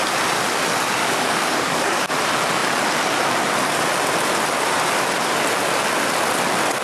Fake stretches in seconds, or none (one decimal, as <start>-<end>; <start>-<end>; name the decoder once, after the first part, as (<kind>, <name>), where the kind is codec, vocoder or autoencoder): 1.0-2.1 (codec, DAC)